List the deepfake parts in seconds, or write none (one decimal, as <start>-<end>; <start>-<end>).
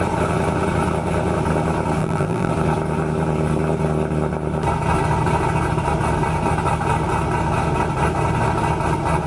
2.0-2.5